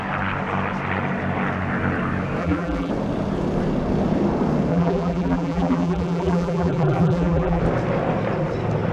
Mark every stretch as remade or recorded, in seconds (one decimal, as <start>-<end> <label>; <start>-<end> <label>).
0.0-2.4 recorded; 2.4-2.9 remade; 2.9-4.7 recorded; 4.7-7.6 remade; 7.6-8.9 recorded